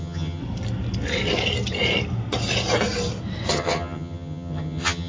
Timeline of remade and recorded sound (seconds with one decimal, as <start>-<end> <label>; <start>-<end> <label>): 0.0-0.4 remade; 0.4-3.5 recorded; 3.5-5.1 remade